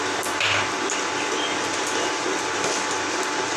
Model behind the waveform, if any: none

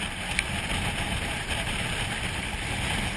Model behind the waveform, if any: none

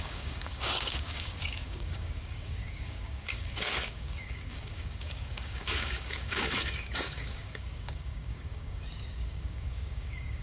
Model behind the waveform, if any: codec, DAC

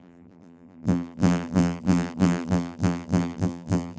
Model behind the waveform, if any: vocoder, BigVGAN v2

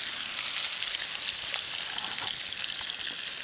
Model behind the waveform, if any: none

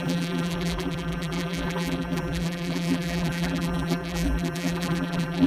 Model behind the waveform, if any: vocoder, BigVGAN v2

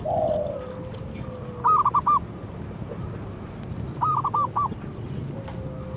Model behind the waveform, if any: none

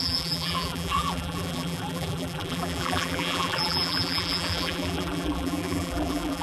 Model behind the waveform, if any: vocoder, BigVGAN v2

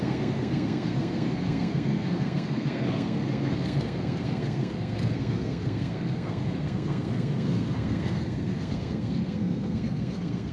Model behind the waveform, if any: codec, SNAC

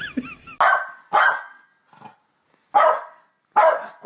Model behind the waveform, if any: none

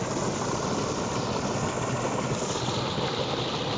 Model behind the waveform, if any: none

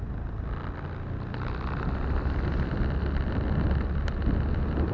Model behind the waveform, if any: none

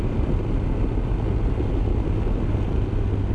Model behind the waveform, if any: none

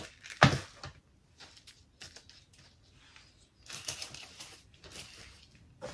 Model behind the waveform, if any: none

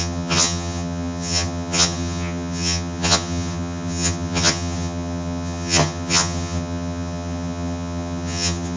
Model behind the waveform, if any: vocoder, HiFi-GAN